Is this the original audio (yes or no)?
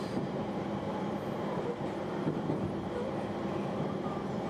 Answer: no